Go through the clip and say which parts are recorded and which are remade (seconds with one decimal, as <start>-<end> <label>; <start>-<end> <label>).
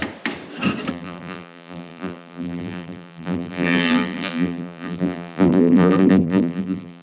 0.0-0.9 recorded; 0.9-7.0 remade